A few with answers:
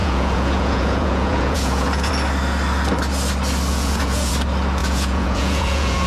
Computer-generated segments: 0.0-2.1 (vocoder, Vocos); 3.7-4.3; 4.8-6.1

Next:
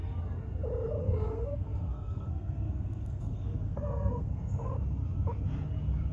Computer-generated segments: 1.0-4.7 (codec, SNAC)

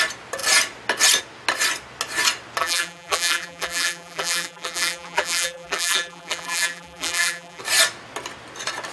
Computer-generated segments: 2.6-7.6 (vocoder, BigVGAN v2)

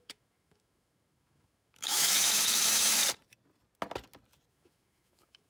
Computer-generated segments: 0.0-3.0 (autoencoder, DAC-VAE); 4.5-5.5

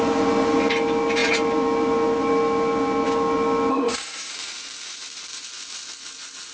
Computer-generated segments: 3.7-4.3 (codec, SNAC)